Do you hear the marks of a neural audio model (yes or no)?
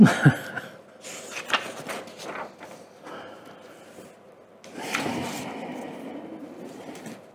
no